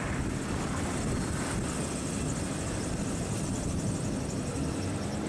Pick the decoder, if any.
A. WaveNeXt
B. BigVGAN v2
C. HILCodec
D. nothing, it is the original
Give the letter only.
D